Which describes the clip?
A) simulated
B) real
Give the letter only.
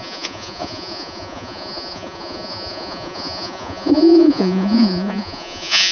A